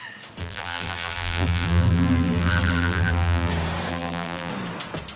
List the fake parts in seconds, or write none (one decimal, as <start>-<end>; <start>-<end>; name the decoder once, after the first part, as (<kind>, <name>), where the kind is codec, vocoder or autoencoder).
0.4-3.5 (vocoder, BigVGAN v2); 3.9-4.5